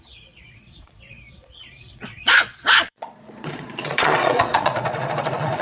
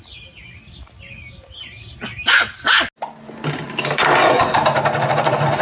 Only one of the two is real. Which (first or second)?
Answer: second